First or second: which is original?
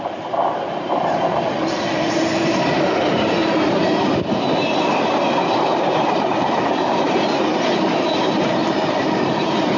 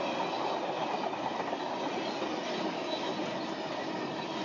second